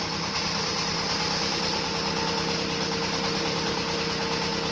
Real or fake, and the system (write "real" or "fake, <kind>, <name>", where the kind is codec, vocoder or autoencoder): real